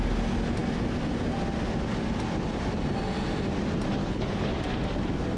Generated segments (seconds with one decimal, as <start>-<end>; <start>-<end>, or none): 4.0-4.5